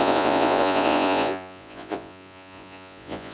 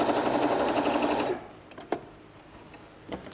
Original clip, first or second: second